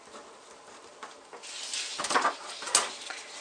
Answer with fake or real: real